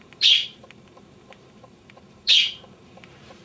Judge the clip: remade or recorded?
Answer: remade